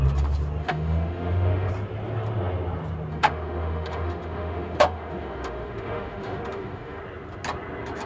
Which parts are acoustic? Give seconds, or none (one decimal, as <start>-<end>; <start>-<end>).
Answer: 0.0-0.6; 1.7-3.1; 7.0-8.1